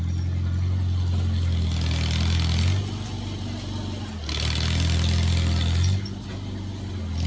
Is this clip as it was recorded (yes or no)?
yes